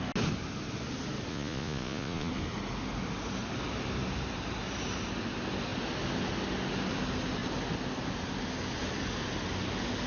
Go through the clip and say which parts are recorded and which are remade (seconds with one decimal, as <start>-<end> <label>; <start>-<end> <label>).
0.0-1.3 recorded; 1.3-2.3 remade; 2.3-10.1 recorded